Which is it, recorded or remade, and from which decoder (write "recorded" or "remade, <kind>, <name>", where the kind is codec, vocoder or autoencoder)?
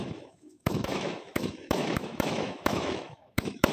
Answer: remade, autoencoder, DAC-VAE